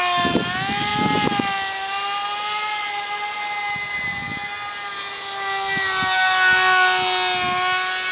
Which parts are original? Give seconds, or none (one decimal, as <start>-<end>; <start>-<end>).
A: 0.0-8.1